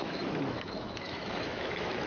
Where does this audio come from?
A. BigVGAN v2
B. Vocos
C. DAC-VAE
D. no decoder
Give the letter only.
C